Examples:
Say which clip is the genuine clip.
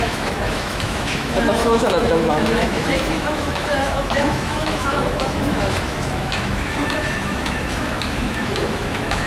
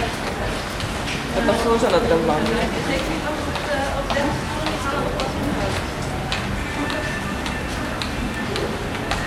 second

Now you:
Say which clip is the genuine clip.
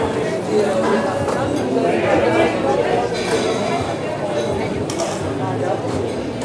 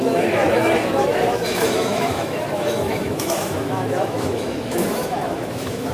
first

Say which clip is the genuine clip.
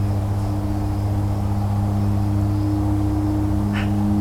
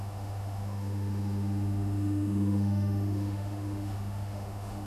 first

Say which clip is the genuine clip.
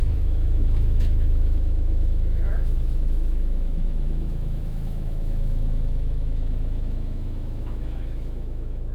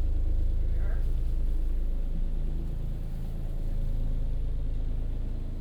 second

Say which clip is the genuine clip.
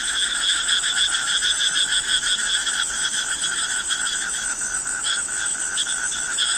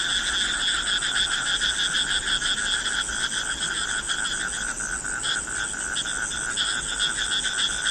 second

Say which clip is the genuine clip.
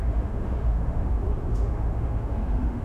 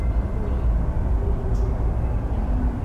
second